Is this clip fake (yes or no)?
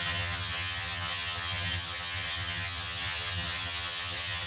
yes